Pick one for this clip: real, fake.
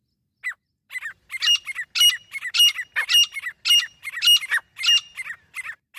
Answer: real